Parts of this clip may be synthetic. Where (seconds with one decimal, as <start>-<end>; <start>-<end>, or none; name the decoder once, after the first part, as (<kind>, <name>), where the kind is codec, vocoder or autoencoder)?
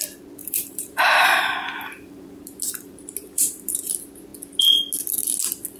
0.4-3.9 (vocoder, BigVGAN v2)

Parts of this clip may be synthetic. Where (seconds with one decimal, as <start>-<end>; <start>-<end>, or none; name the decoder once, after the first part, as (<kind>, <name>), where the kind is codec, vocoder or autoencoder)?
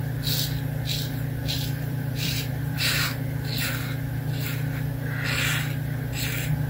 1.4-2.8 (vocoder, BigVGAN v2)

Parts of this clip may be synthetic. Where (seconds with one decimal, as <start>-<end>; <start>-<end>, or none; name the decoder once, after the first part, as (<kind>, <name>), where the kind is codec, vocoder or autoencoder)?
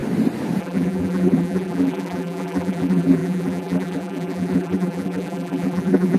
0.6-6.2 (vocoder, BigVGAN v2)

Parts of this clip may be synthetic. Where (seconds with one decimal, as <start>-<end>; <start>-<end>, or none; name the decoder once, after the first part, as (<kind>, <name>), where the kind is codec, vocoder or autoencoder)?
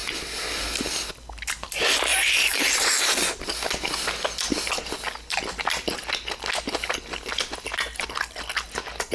2.1-3.0 (vocoder, BigVGAN v2)